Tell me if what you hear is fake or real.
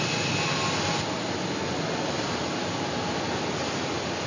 real